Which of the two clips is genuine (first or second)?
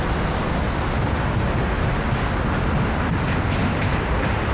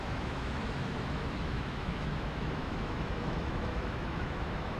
first